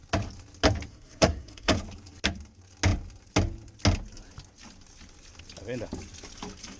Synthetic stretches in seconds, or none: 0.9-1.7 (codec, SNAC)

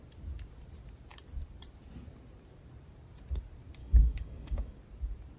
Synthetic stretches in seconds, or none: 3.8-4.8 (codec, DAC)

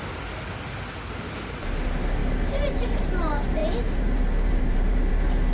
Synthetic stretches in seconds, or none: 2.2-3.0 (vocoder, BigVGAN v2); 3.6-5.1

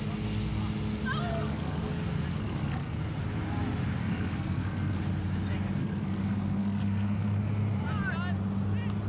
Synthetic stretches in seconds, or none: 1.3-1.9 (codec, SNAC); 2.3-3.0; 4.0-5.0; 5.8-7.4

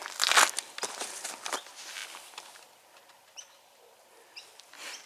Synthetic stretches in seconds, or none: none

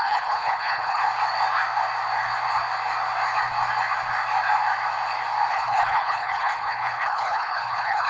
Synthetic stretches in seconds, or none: 0.0-1.0 (codec, HILCodec); 5.5-8.1

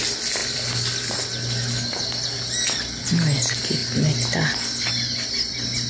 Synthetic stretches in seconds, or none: none